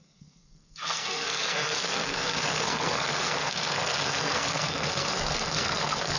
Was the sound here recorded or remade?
remade